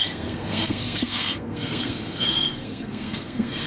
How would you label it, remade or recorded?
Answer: remade